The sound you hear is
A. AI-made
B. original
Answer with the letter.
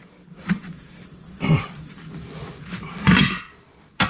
B